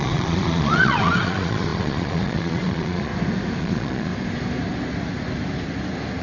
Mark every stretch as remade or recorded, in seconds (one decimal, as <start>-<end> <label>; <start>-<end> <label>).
0.0-3.1 remade; 3.1-3.6 recorded; 3.6-4.1 remade; 4.1-6.2 recorded